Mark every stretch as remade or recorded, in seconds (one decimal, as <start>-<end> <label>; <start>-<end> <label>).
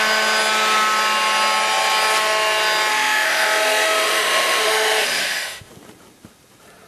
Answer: 0.0-2.9 recorded; 2.9-5.7 remade; 5.7-6.9 recorded